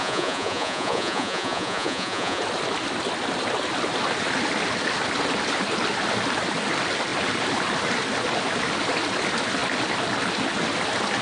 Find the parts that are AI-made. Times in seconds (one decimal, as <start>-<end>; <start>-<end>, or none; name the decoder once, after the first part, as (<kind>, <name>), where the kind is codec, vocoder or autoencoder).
0.0-2.4 (vocoder, Vocos)